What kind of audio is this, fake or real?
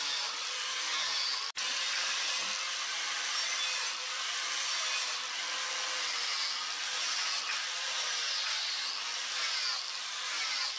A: real